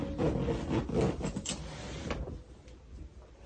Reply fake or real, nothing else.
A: real